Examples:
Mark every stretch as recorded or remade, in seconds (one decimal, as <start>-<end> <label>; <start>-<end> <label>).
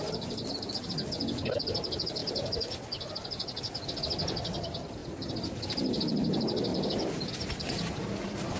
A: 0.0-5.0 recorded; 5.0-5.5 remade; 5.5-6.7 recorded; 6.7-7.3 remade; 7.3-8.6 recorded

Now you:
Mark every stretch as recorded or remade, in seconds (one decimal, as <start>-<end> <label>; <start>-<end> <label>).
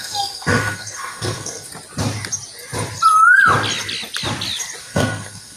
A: 0.0-1.7 remade; 1.7-4.8 recorded; 4.8-5.6 remade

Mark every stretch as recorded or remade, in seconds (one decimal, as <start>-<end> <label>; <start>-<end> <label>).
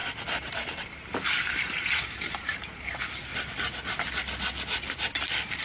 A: 0.0-2.8 remade; 2.8-5.6 recorded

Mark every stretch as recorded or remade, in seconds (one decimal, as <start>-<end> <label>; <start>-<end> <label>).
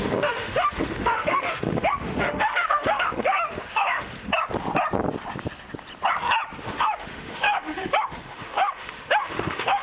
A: 0.0-4.3 remade; 4.3-6.6 recorded; 6.6-9.8 remade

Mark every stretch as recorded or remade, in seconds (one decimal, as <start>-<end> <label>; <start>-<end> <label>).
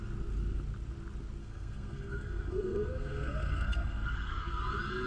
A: 0.0-1.4 recorded; 1.4-4.5 remade; 4.5-5.1 recorded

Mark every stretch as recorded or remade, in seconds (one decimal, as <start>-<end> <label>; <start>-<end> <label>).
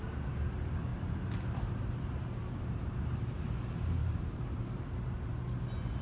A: 0.0-0.9 recorded; 0.9-3.4 remade; 3.4-4.0 recorded; 4.0-6.0 remade